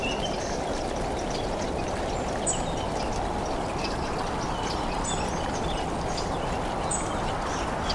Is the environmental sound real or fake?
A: real